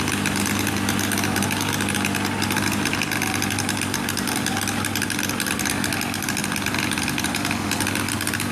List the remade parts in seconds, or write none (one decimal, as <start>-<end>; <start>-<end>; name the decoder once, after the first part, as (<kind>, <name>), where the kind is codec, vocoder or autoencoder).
none